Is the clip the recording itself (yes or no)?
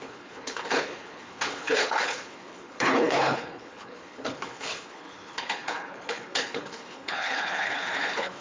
no